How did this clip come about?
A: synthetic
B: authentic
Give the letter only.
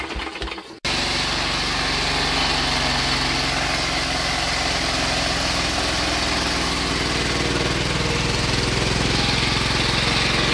B